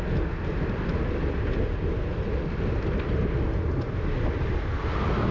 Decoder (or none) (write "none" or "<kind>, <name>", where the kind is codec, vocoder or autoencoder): none